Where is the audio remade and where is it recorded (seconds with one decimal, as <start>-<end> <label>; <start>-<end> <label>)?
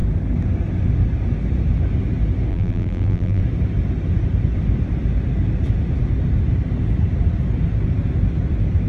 0.0-2.5 recorded; 2.5-3.4 remade; 3.4-8.9 recorded